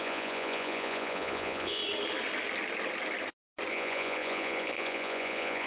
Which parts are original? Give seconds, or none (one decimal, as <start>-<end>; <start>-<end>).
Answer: 1.8-3.7